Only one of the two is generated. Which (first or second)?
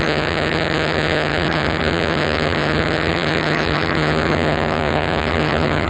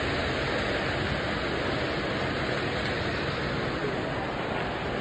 first